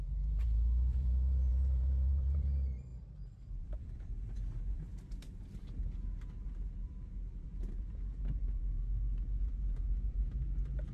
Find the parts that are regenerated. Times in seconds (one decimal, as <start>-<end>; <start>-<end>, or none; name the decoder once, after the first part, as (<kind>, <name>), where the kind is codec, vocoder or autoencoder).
0.0-4.9 (vocoder, BigVGAN v2); 7.4-10.9